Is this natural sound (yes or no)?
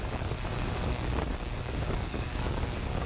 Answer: no